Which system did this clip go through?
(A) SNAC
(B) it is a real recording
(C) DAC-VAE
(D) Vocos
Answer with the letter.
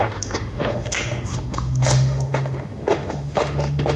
C